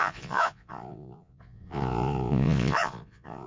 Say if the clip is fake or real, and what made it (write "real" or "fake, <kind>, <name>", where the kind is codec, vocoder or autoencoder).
fake, vocoder, Vocos